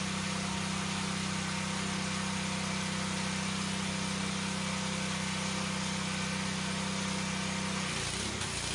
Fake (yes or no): no